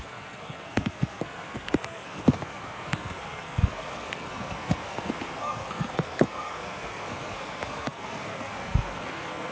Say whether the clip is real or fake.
fake